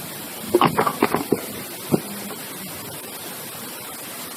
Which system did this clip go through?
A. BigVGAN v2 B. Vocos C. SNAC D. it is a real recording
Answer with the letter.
D